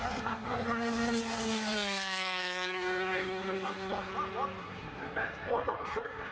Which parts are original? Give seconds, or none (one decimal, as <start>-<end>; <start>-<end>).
4.1-4.6